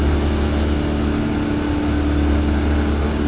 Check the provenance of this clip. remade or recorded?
recorded